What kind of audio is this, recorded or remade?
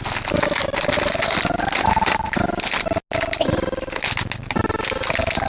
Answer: recorded